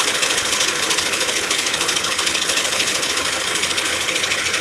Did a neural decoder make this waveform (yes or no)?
yes